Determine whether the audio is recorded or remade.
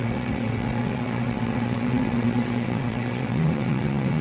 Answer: remade